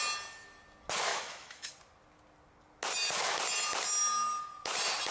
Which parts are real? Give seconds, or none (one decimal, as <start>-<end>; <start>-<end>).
0.0-1.1; 1.7-5.1